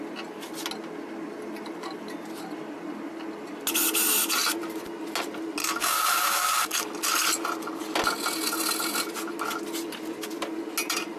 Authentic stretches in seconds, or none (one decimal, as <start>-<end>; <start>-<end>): 0.0-5.6; 6.8-11.2